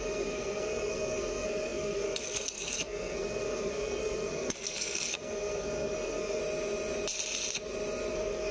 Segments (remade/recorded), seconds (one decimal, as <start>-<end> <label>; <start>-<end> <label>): 0.0-6.4 remade; 6.4-8.1 recorded; 8.1-8.5 remade